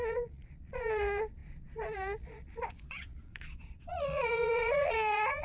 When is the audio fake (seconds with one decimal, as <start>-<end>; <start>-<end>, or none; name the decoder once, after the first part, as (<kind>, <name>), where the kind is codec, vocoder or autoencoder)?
0.0-5.4 (vocoder, Vocos)